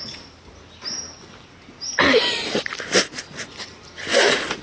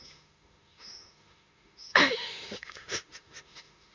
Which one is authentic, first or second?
first